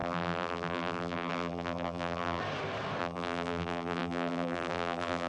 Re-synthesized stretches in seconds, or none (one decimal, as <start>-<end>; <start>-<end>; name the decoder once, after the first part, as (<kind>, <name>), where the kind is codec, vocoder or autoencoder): 0.0-2.4 (vocoder, BigVGAN v2); 3.0-5.3